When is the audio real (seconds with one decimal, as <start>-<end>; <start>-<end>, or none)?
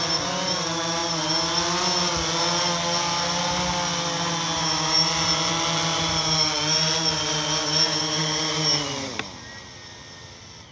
0.0-10.7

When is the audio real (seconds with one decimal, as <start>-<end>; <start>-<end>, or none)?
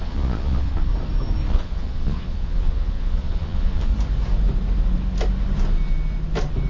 0.9-1.5; 3.9-6.7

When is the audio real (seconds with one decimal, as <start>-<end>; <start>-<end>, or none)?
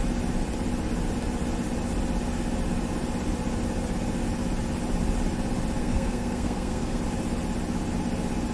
0.0-5.8; 7.0-8.5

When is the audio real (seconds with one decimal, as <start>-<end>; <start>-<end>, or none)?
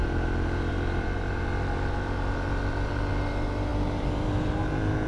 none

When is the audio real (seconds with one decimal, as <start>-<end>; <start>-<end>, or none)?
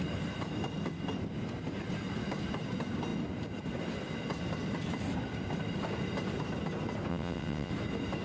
0.0-7.1; 7.7-8.2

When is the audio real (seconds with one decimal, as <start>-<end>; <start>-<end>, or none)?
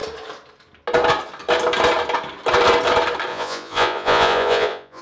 0.0-3.3